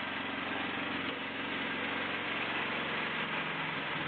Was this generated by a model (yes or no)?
no